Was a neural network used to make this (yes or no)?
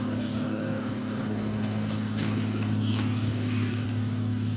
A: yes